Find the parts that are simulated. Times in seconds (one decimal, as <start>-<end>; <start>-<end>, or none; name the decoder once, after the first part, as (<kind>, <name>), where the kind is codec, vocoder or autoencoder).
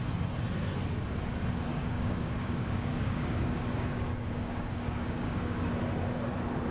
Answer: 1.7-5.7 (codec, DAC)